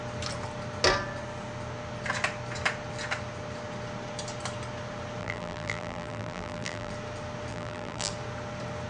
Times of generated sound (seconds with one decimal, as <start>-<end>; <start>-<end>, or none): 5.2-6.9; 7.5-8.1

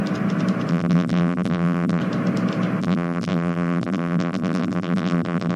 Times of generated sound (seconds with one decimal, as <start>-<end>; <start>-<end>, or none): 0.7-2.0; 2.8-5.6

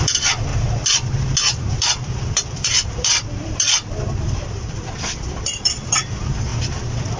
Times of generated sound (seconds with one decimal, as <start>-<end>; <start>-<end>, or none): 0.0-0.5; 1.7-6.5

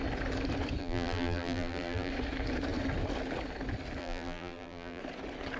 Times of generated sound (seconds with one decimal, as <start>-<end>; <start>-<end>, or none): 0.8-2.1; 4.0-5.0